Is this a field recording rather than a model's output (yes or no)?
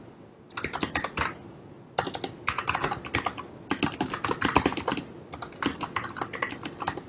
yes